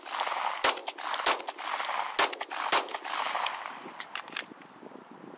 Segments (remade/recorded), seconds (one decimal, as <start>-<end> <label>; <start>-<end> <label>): 0.0-5.4 recorded